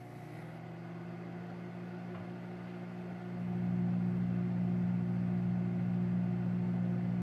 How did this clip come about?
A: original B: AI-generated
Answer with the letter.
A